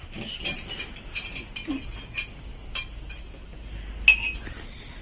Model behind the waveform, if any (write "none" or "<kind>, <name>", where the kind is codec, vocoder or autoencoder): none